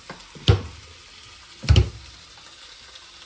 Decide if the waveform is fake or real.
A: real